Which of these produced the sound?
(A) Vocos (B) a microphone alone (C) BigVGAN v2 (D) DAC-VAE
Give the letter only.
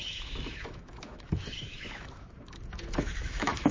D